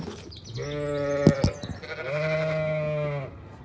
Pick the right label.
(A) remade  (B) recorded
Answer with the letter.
B